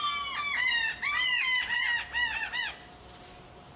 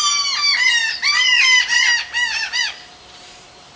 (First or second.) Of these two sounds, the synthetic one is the second